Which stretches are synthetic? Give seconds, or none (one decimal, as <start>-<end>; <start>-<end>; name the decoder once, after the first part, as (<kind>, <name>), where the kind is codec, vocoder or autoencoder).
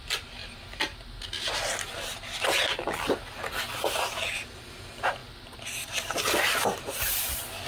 5.2-7.7 (vocoder, BigVGAN v2)